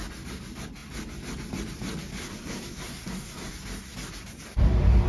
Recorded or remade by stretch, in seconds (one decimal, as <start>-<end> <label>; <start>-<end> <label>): 0.0-2.2 recorded; 2.2-3.5 remade; 3.5-5.1 recorded